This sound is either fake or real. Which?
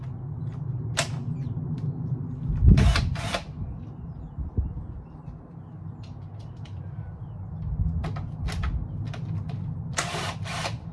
real